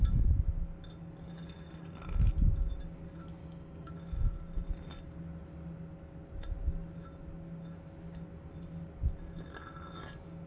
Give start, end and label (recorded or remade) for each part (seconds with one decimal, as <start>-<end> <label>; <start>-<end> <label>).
0.0-3.4 recorded; 3.4-3.9 remade; 3.9-10.5 recorded